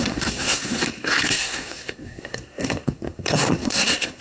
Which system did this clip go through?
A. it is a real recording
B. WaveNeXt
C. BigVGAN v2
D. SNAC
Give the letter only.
D